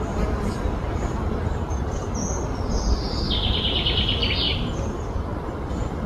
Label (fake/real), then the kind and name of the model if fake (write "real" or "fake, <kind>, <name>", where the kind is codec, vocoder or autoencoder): real